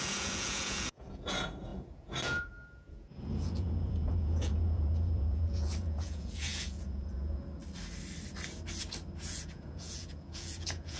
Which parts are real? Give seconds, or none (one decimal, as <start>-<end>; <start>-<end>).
7.6-9.3